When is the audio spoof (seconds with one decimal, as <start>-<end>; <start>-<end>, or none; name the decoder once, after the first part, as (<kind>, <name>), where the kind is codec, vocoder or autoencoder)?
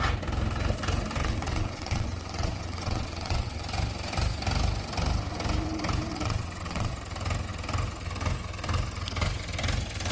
1.2-3.6 (vocoder, WaveNeXt); 6.1-6.9